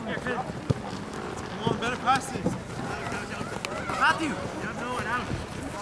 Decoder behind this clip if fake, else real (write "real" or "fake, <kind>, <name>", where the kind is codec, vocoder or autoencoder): real